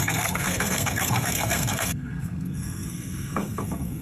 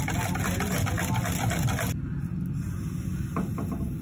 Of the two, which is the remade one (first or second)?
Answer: first